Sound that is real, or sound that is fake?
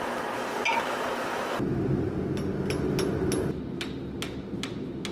real